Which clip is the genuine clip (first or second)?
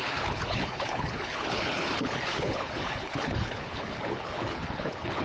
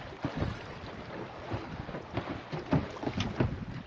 second